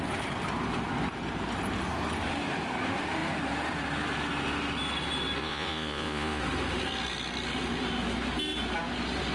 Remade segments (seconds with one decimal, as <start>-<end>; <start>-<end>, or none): 5.4-6.4